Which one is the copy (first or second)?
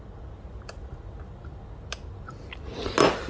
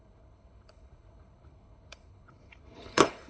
second